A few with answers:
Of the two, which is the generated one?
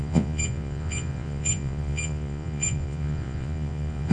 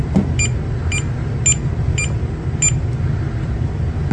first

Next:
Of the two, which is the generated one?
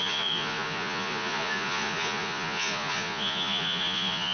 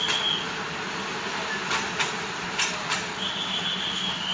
first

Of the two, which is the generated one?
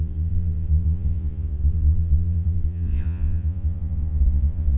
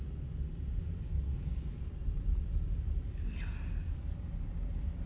first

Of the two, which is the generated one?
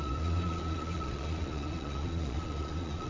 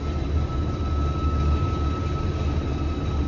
first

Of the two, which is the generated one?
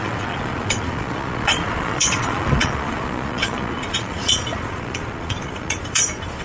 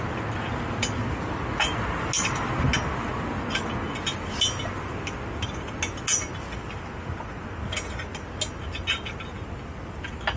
first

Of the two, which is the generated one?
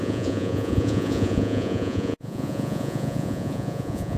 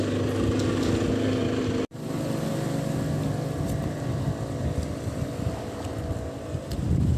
first